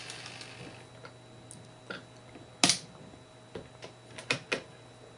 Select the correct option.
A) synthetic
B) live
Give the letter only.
B